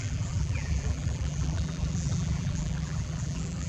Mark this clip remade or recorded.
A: remade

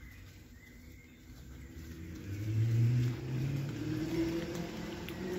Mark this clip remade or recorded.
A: remade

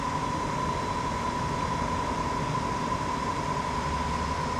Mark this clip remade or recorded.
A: recorded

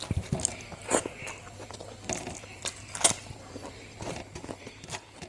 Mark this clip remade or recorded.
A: recorded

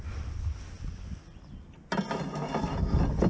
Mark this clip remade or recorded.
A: recorded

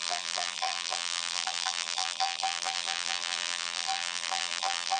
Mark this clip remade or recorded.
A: remade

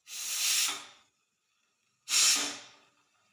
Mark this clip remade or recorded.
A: recorded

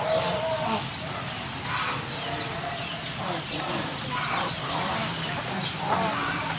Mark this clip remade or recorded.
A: remade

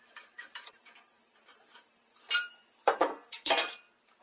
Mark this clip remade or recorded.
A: remade